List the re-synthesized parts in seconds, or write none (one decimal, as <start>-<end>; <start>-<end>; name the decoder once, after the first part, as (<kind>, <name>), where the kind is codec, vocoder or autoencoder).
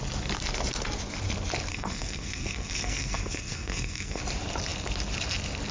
1.7-4.2 (codec, SNAC)